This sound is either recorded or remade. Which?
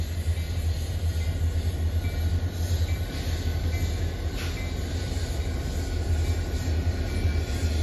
recorded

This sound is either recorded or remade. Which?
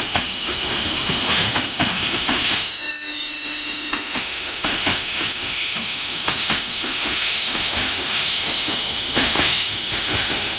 remade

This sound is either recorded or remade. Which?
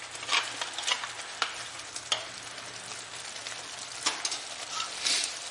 recorded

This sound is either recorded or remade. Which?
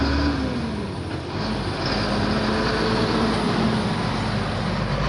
recorded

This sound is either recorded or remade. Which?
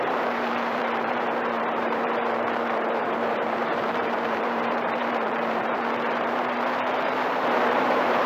remade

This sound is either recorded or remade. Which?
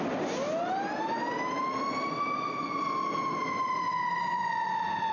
recorded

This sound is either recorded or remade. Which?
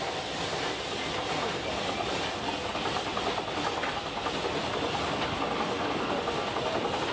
recorded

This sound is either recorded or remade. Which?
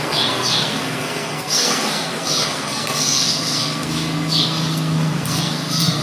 remade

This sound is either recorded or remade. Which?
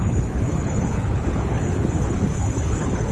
remade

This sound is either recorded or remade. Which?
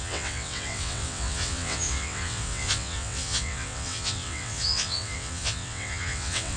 remade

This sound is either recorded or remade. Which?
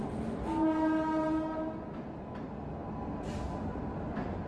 recorded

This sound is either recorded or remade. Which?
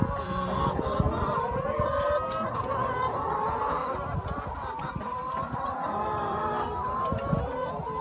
recorded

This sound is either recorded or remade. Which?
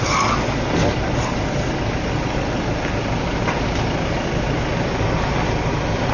recorded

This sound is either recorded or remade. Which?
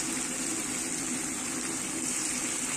recorded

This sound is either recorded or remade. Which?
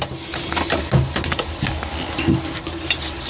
recorded